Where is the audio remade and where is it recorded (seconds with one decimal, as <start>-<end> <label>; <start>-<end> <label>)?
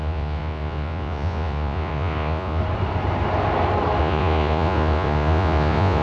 0.0-2.6 remade; 2.6-4.0 recorded; 4.0-6.0 remade